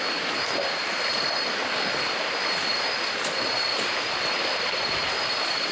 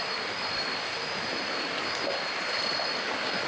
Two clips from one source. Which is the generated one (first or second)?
first